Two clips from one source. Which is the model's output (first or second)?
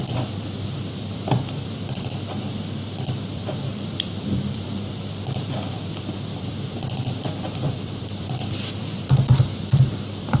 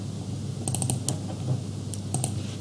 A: first